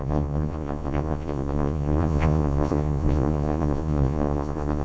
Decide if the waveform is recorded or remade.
remade